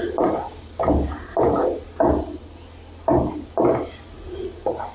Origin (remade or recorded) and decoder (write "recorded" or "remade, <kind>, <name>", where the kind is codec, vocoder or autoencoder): recorded